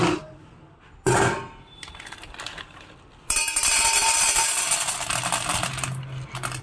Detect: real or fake real